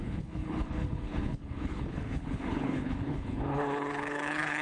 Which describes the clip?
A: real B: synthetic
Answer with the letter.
B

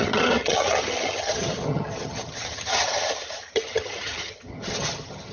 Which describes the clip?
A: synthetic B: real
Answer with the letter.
A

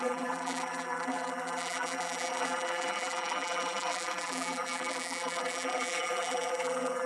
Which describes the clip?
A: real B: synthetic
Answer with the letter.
B